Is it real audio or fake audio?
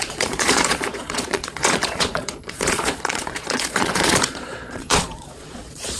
fake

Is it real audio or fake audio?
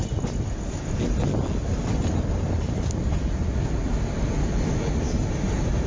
real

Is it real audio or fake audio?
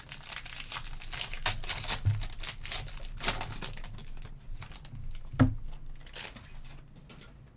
real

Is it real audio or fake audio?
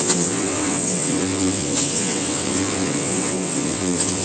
fake